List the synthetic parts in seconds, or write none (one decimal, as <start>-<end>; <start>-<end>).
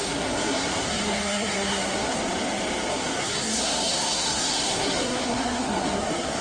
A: 0.0-2.2; 2.9-6.4